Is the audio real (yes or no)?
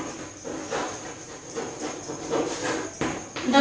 yes